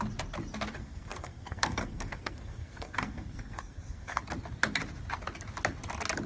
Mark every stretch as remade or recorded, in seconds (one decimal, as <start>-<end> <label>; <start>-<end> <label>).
0.0-0.8 recorded; 0.8-4.2 remade; 4.2-6.3 recorded